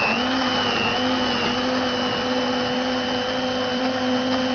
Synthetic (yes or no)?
no